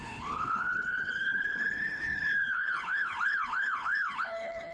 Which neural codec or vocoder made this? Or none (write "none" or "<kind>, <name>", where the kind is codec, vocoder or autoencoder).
codec, HILCodec